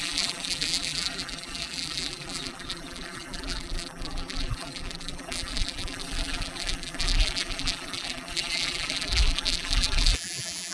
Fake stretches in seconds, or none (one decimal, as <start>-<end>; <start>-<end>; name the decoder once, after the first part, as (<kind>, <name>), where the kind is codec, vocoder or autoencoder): 0.0-10.7 (vocoder, BigVGAN v2)